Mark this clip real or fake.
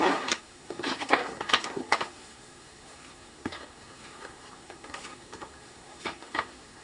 fake